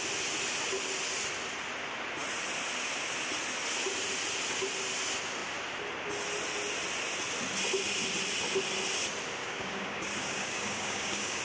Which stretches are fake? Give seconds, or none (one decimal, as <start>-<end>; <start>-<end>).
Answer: 9.4-11.4